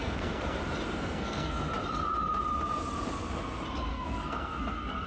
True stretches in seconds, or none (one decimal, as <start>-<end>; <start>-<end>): 0.6-1.0; 1.6-3.9